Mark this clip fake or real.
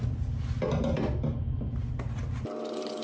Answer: real